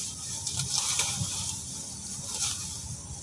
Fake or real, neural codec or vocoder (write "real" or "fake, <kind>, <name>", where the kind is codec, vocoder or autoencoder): real